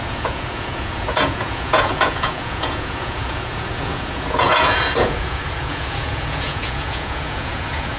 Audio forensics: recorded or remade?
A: remade